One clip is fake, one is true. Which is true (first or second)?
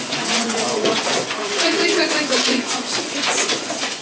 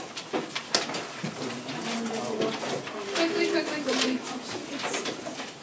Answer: second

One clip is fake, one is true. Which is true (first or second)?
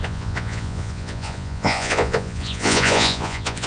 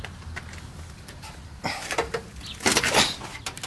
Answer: second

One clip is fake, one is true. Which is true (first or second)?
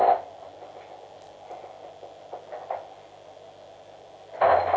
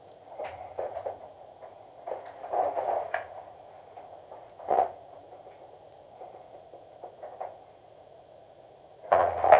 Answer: first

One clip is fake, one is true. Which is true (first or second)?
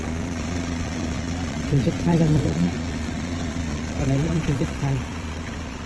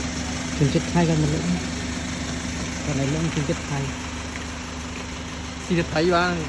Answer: second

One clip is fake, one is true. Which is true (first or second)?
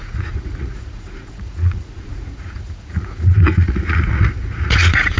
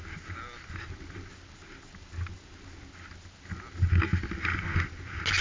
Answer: second